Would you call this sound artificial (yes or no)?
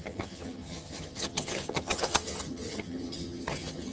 yes